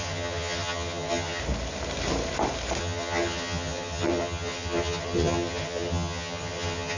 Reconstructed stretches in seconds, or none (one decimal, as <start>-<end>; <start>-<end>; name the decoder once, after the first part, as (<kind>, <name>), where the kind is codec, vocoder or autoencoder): 0.0-1.4 (vocoder, HiFi-GAN); 2.8-7.0